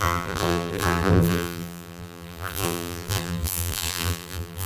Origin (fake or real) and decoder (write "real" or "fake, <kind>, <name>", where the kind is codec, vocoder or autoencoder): fake, vocoder, BigVGAN v2